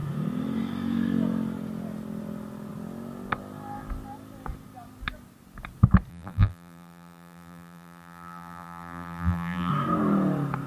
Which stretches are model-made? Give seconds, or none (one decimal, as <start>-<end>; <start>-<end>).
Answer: 6.1-9.7